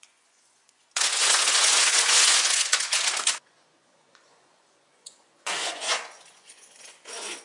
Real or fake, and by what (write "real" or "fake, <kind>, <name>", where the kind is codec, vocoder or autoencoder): fake, vocoder, Vocos